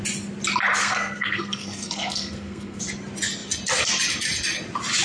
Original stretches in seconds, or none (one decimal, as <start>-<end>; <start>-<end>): 0.0-0.8; 2.8-5.0